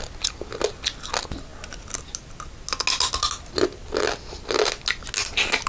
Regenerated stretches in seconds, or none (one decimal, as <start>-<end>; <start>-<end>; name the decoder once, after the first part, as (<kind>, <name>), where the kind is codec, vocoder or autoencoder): none